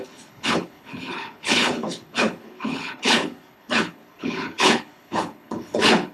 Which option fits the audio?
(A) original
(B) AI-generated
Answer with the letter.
B